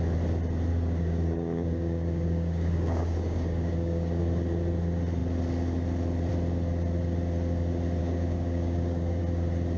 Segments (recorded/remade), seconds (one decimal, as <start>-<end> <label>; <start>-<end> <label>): 0.0-0.7 recorded; 0.7-4.2 remade; 4.2-8.0 recorded; 8.0-9.2 remade; 9.2-9.8 recorded